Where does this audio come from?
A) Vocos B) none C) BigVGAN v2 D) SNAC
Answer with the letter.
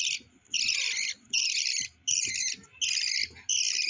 B